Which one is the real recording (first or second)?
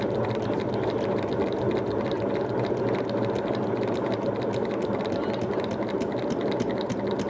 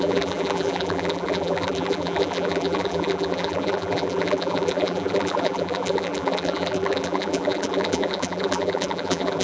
first